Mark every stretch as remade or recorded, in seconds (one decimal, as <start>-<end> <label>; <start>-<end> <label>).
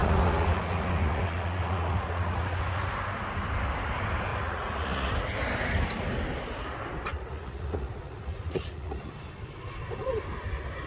0.0-2.9 remade; 2.9-4.3 recorded; 4.3-5.1 remade; 5.1-7.1 recorded; 7.1-9.1 remade; 9.1-10.9 recorded